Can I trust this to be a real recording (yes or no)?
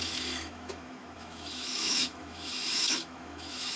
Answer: no